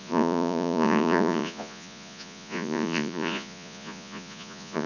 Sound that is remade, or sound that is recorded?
remade